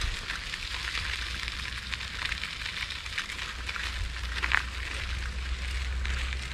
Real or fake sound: real